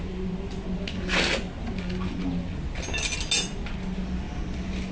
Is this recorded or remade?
recorded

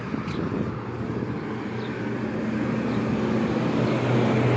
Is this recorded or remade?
recorded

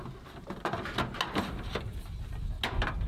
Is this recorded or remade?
recorded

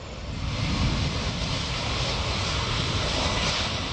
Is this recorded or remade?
recorded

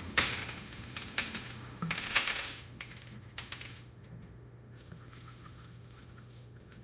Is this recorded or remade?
remade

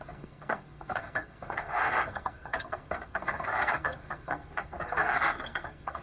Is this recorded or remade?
remade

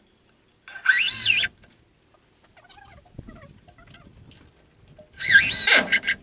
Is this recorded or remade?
recorded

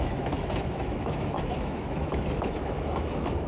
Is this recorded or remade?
remade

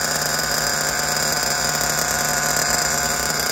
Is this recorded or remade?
recorded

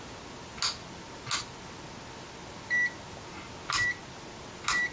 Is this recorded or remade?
recorded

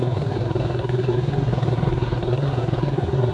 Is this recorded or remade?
remade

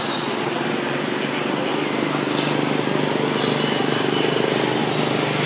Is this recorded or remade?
recorded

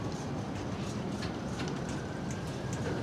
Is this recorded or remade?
remade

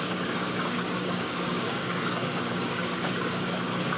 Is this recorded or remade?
remade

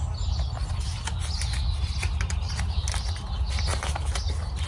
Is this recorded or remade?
recorded